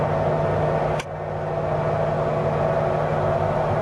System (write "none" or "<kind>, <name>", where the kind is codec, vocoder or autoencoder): none